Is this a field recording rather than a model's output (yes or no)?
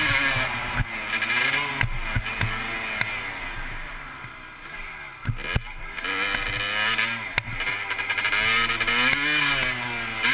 yes